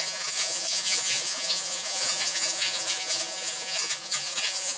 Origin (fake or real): fake